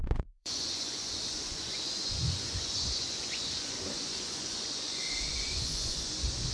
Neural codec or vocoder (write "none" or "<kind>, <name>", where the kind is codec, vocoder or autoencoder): vocoder, Vocos